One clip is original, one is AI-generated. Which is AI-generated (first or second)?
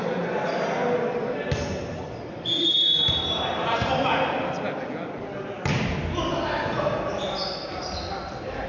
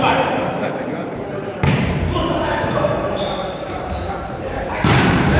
second